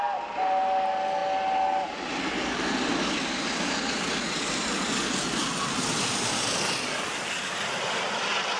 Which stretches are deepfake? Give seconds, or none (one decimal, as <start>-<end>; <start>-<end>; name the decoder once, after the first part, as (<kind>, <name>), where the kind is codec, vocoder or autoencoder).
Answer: none